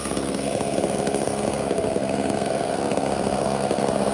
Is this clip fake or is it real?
fake